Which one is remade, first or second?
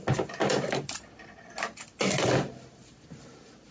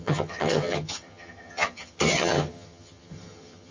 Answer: second